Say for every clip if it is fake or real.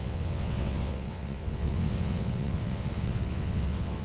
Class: fake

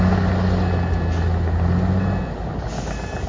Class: real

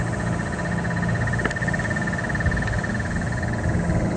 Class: real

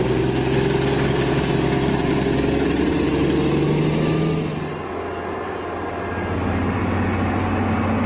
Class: real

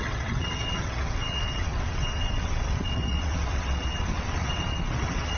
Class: fake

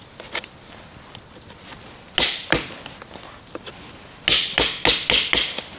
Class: real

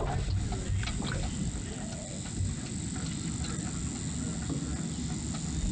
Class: real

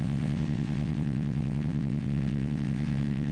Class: fake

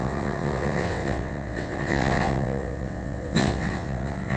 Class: fake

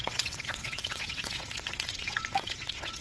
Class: fake